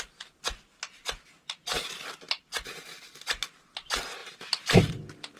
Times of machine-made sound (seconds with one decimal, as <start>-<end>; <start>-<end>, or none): 0.0-5.4